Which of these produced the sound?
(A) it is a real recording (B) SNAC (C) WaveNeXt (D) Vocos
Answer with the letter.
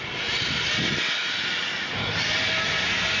A